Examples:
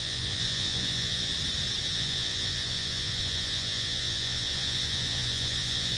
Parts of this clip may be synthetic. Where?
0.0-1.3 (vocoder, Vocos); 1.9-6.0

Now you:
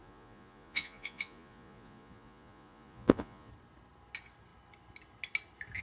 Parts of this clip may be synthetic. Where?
0.0-3.5 (vocoder, Vocos)

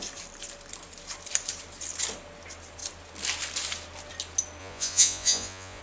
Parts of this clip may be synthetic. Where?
4.6-5.8 (vocoder, Vocos)